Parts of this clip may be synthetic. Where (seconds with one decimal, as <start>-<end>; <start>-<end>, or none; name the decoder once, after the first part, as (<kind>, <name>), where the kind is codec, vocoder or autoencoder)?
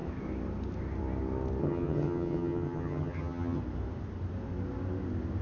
1.6-3.6 (vocoder, HiFi-GAN)